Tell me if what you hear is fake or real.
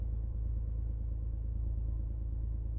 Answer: real